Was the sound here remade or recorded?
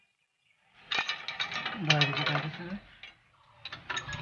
recorded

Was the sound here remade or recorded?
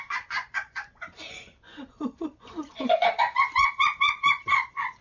remade